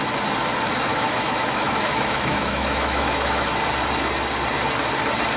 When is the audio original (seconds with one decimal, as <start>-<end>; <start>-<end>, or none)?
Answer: 0.0-0.9; 3.5-5.4